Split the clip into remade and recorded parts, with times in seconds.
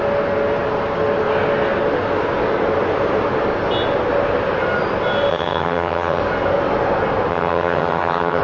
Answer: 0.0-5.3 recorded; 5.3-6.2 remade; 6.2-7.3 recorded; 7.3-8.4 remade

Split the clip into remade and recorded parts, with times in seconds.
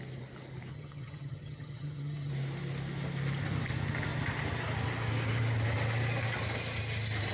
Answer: 0.0-0.7 recorded; 0.7-2.3 remade; 2.3-7.3 recorded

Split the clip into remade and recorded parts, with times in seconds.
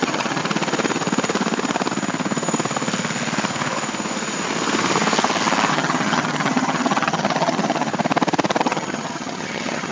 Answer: 0.0-0.4 remade; 0.4-5.7 recorded; 5.7-7.9 remade; 7.9-8.6 recorded; 8.6-9.9 remade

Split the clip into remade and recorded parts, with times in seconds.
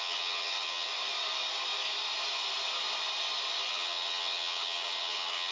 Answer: 0.0-0.9 remade; 0.9-3.7 recorded; 3.7-5.5 remade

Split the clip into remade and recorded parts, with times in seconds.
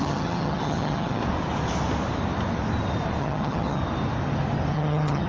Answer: 0.0-1.2 remade; 1.2-3.2 recorded; 3.2-3.8 remade; 3.8-4.7 recorded; 4.7-5.3 remade